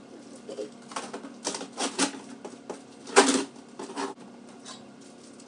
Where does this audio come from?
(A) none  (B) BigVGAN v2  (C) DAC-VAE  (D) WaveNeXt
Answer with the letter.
A